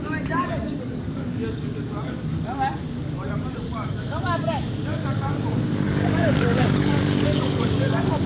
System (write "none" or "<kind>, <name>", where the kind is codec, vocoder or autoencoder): codec, DAC